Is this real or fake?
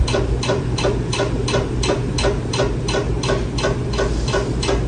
real